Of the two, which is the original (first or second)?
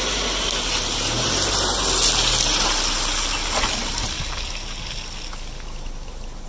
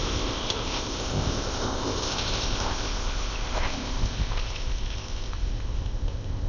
first